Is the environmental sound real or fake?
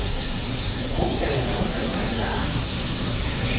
fake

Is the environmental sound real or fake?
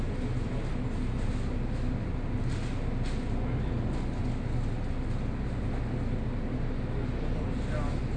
real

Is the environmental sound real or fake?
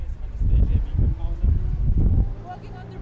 real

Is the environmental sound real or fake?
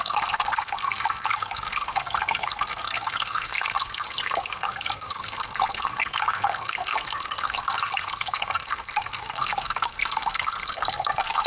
fake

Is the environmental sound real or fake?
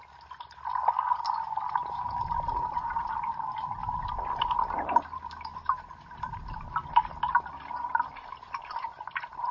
real